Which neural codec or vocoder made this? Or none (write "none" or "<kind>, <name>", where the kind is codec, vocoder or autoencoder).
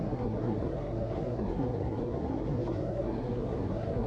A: codec, SNAC